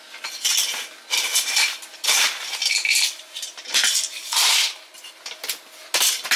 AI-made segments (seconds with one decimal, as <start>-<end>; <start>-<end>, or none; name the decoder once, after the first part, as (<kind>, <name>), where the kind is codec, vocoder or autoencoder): 1.3-5.1 (vocoder, BigVGAN v2)